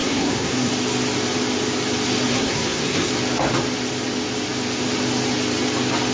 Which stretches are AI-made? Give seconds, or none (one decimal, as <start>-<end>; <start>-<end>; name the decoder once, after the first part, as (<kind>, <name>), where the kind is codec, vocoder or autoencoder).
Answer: 0.0-0.7 (codec, SNAC); 2.3-3.1